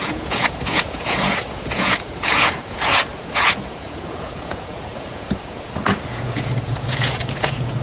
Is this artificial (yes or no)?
yes